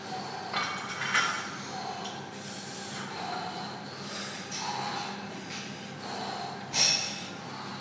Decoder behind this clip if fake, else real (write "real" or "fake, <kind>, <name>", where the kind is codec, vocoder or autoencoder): real